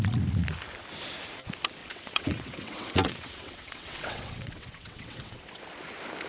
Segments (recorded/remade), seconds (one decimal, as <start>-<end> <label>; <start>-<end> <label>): 0.0-1.8 recorded; 1.8-5.6 remade; 5.6-6.3 recorded